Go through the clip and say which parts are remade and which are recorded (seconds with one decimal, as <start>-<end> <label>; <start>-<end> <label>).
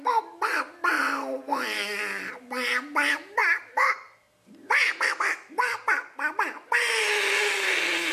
0.0-8.1 recorded